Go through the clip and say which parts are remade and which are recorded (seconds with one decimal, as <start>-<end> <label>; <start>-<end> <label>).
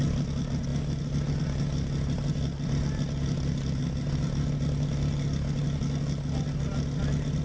0.0-7.4 recorded